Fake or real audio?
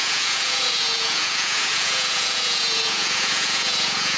fake